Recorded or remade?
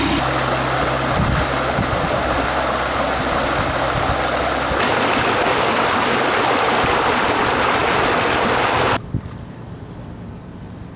recorded